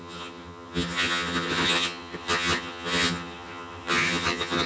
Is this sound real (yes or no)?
no